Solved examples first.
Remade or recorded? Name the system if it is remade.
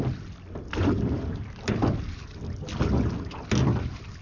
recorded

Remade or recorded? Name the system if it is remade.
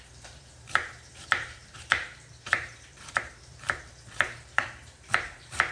remade, vocoder, BigVGAN v2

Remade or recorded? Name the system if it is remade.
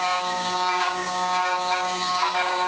remade, codec, DAC